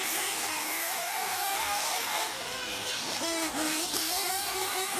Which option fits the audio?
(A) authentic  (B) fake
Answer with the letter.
B